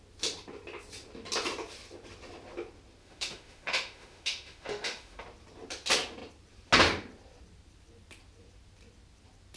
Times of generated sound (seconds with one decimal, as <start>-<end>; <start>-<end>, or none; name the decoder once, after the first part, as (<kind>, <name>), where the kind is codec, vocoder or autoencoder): 3.0-5.2 (autoencoder, DAC-VAE)